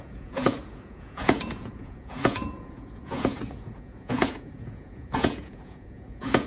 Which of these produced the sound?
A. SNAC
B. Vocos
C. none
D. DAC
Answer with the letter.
B